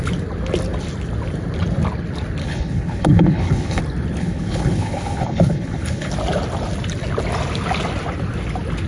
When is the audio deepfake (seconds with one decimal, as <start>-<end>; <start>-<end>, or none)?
2.4-3.8; 4.2-6.1